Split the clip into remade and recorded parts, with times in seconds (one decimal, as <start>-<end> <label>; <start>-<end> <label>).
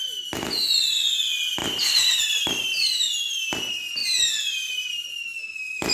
0.0-5.9 remade